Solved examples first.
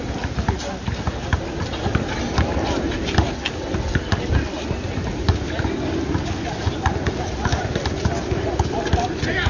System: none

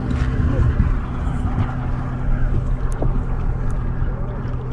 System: none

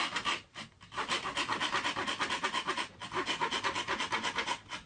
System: none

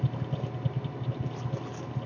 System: none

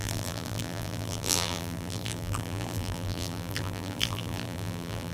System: vocoder, BigVGAN v2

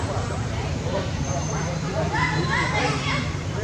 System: vocoder, BigVGAN v2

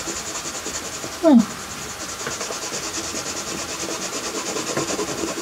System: none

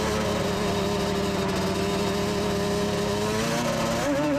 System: none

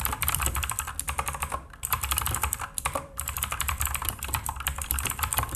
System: vocoder, BigVGAN v2